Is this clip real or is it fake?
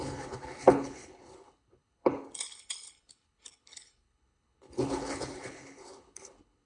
fake